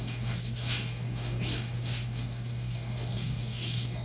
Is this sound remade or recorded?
remade